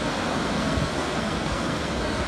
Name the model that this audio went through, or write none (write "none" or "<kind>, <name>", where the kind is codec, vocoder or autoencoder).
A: codec, SNAC